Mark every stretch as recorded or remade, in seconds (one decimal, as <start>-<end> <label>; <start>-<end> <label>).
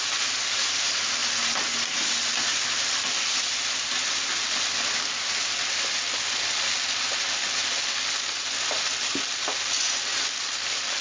0.0-11.0 recorded